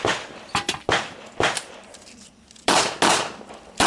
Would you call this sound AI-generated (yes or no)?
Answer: no